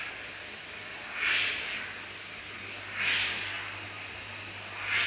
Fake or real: real